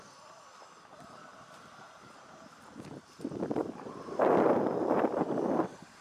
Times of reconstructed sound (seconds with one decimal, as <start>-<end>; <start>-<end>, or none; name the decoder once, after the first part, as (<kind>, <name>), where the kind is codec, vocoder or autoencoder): 3.6-5.6 (vocoder, BigVGAN v2)